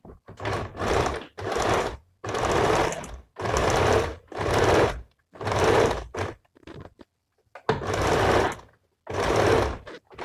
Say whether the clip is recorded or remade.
recorded